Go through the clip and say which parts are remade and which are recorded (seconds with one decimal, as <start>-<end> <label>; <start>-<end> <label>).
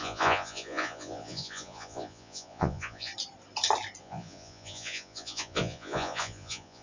0.0-3.1 remade; 3.1-4.0 recorded; 4.0-6.8 remade